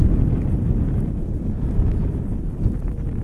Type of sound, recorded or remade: recorded